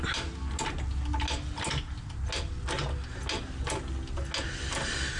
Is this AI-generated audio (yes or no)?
no